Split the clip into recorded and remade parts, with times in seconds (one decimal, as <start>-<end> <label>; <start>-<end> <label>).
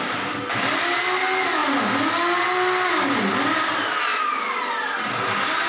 0.0-4.1 recorded; 4.1-5.2 remade; 5.2-5.7 recorded